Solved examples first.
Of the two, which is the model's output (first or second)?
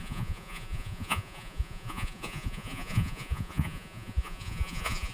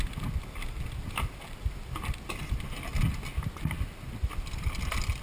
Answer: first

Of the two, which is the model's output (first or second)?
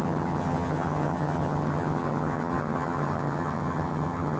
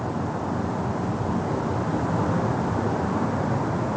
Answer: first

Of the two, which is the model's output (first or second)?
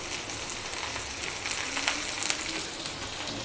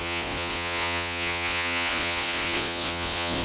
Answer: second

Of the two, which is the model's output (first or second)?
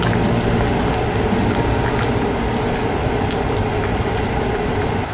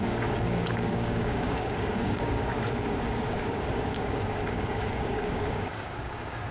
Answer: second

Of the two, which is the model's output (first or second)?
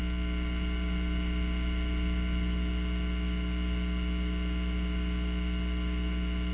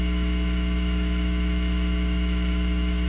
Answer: second